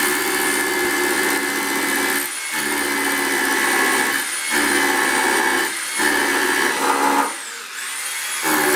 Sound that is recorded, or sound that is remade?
recorded